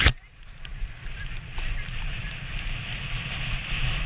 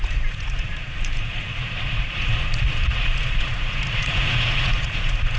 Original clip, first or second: first